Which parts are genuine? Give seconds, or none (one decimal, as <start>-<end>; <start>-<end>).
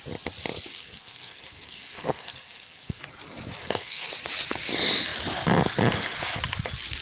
0.0-0.7; 3.0-3.6; 4.1-7.0